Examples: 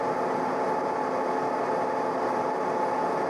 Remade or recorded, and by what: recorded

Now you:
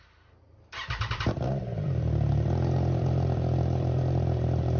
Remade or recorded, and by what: remade, vocoder, BigVGAN v2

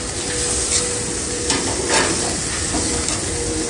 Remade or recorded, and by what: recorded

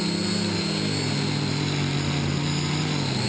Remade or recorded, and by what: recorded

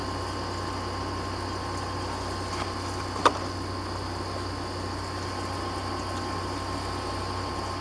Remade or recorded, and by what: recorded